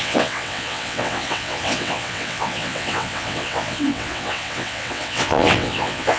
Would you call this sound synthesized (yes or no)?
yes